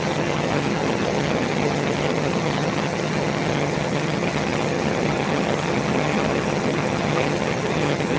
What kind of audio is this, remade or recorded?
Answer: remade